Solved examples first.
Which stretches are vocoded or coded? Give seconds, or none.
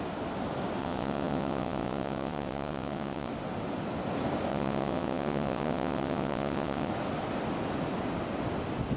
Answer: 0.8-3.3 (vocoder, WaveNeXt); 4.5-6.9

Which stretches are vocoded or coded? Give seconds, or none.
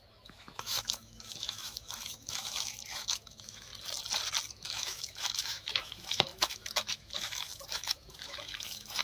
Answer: 0.0-3.7 (autoencoder, DAC-VAE); 4.5-9.0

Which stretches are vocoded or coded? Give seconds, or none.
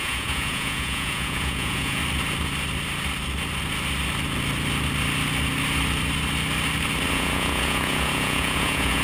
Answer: 0.0-2.0 (vocoder, Vocos); 7.1-9.0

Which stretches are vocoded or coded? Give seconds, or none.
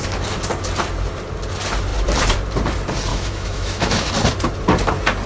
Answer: 3.1-4.1 (autoencoder, DAC-VAE)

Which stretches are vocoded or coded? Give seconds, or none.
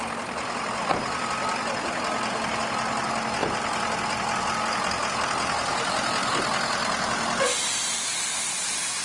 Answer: none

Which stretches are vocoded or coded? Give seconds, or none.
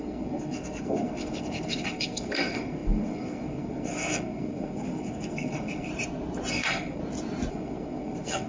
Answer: 0.0-5.9 (codec, SNAC); 6.5-7.0; 7.5-8.5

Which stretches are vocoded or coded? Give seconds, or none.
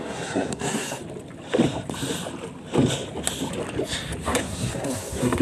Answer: 0.0-1.0 (codec, SNAC); 4.2-5.4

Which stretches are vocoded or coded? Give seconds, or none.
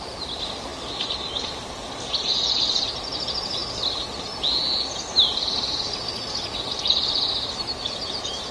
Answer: none